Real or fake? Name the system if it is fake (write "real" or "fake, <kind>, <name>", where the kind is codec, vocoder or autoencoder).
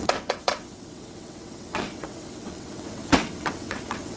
fake, vocoder, WaveNeXt